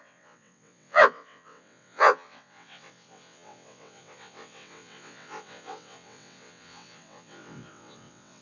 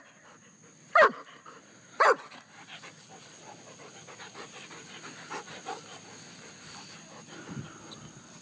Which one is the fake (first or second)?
first